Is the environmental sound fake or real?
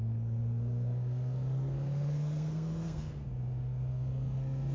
fake